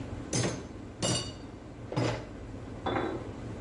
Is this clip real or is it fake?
real